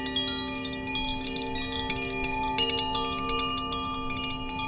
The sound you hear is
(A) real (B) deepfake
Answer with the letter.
A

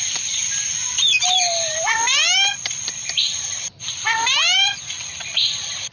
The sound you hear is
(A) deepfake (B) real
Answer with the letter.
A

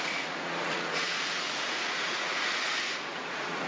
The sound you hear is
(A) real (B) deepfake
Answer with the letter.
B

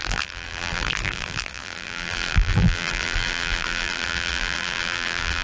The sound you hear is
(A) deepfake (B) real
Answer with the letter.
A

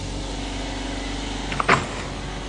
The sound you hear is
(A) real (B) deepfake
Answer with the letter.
A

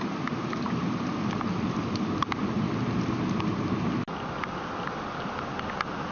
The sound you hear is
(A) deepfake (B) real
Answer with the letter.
B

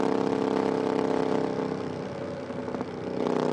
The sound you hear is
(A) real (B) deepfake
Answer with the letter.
A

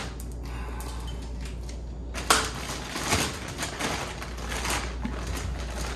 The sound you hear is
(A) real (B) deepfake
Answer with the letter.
A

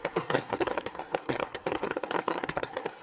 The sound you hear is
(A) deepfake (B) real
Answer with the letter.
A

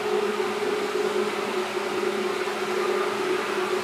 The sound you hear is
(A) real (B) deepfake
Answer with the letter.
A